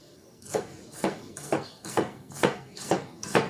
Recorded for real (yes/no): no